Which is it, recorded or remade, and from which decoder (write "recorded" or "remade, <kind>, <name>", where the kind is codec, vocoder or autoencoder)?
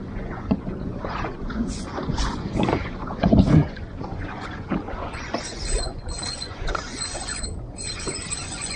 remade, vocoder, Vocos